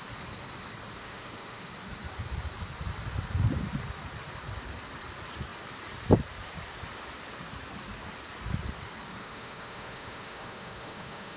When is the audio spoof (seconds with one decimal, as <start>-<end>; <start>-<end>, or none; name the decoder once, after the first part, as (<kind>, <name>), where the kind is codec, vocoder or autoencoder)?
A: 1.0-1.7 (autoencoder, DAC-VAE); 9.2-11.4